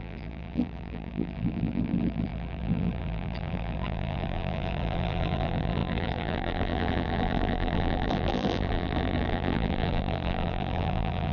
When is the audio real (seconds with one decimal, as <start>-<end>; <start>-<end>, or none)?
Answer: none